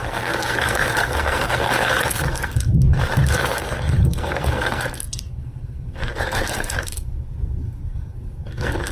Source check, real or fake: fake